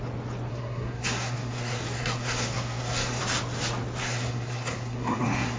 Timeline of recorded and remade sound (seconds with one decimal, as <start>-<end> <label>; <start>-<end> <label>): 0.0-0.5 recorded; 0.5-3.2 remade; 3.2-4.0 recorded; 4.0-5.6 remade